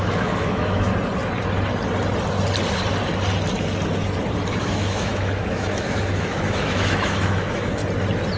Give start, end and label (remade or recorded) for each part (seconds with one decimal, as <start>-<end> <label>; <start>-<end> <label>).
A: 0.0-0.9 remade; 0.9-4.6 recorded; 4.6-7.8 remade; 7.8-8.4 recorded